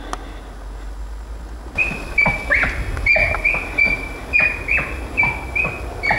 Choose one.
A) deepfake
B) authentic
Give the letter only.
B